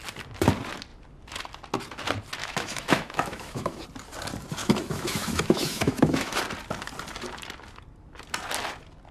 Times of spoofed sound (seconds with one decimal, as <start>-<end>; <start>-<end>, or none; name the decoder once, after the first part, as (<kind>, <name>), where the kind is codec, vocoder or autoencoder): 2.4-3.8 (autoencoder, DAC-VAE); 4.6-6.4